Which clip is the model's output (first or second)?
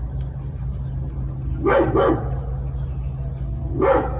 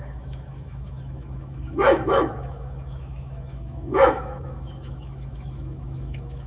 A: second